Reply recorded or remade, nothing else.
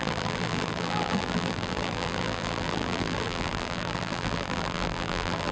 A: remade